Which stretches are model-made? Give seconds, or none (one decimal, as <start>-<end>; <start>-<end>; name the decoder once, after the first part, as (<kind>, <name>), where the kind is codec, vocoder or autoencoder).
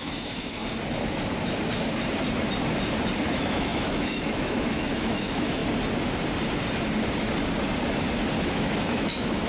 0.0-0.6 (autoencoder, DAC-VAE); 3.2-5.6; 8.4-9.5